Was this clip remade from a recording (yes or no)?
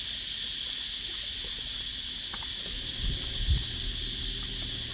no